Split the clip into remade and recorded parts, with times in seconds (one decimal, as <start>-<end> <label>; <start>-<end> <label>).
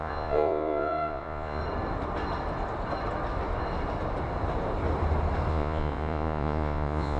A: 0.0-1.6 remade; 1.6-5.5 recorded; 5.5-7.2 remade